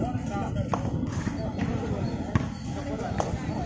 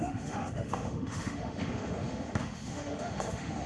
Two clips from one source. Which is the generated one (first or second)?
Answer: second